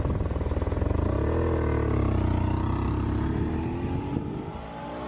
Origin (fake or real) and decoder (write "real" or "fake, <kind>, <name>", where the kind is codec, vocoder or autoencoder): real